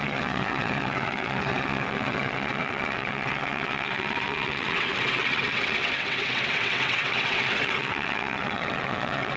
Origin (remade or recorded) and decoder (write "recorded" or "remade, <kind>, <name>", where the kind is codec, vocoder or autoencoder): remade, vocoder, WaveNeXt